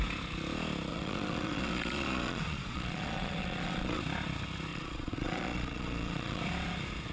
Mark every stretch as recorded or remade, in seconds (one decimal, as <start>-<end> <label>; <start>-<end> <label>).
0.0-0.9 recorded; 0.9-4.0 remade; 4.0-4.7 recorded; 4.7-6.4 remade; 6.4-7.1 recorded